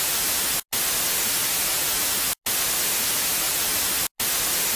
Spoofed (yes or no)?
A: no